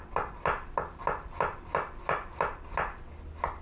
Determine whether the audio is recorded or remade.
recorded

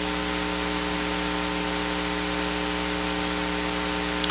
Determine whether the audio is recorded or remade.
recorded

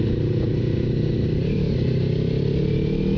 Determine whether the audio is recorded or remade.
recorded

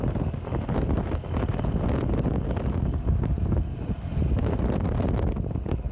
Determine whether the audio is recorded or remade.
recorded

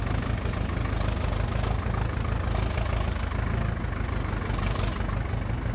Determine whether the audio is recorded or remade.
recorded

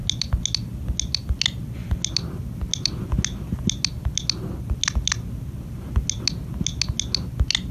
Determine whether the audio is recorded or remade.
recorded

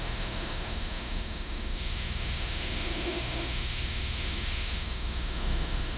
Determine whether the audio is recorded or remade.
remade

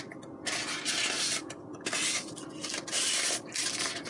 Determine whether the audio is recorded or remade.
recorded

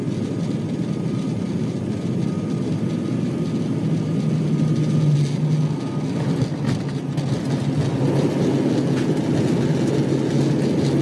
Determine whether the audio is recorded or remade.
recorded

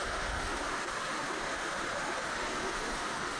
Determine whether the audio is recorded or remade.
remade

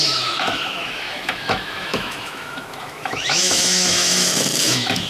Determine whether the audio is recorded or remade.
remade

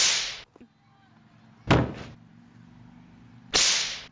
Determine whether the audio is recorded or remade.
recorded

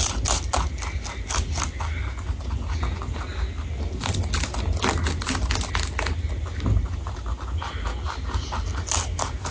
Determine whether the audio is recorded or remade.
recorded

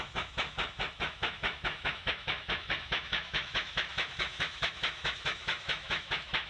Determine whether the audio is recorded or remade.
remade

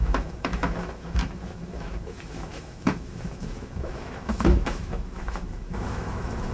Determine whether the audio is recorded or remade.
remade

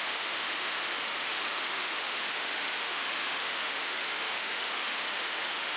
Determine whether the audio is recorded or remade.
remade